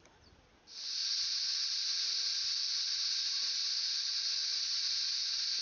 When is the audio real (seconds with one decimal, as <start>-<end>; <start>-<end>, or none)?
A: 0.0-5.6